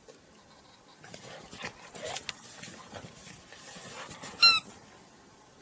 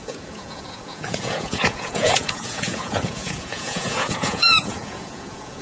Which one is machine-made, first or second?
second